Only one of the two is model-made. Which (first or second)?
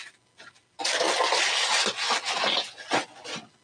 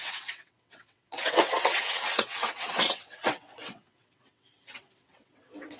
second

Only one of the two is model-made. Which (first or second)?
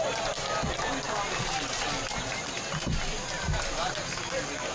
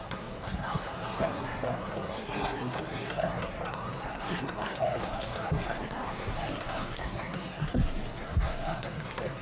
second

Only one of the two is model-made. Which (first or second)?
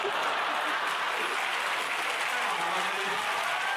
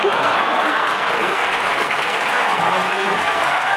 second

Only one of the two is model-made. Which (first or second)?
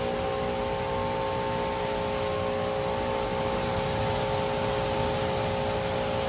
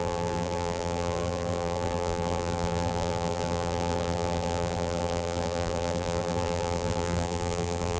second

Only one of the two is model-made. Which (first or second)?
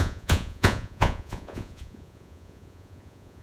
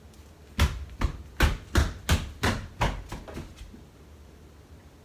first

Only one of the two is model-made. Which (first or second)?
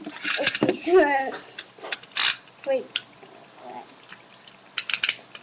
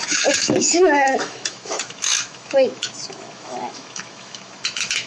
second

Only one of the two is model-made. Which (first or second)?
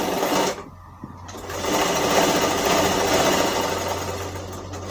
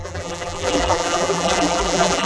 second